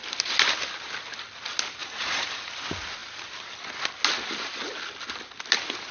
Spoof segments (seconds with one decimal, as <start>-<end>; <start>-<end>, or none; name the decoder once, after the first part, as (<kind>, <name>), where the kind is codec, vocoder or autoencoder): 1.8-2.5 (vocoder, Vocos)